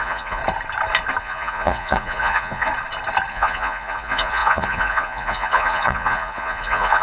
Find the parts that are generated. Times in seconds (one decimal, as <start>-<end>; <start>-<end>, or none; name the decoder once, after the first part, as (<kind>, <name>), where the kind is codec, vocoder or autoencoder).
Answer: 0.0-0.4 (vocoder, Vocos); 1.2-2.7; 3.3-7.0